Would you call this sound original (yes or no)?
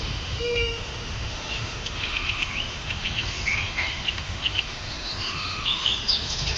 no